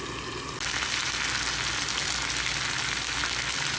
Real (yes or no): yes